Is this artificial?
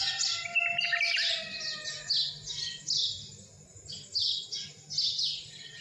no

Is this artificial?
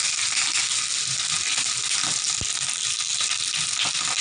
no